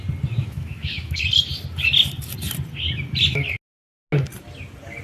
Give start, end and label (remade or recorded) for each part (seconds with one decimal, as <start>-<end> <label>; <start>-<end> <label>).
0.0-0.4 recorded; 0.4-1.2 remade; 1.2-5.0 recorded